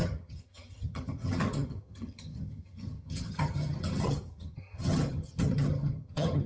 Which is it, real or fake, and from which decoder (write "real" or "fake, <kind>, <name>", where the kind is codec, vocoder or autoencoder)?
fake, vocoder, HiFi-GAN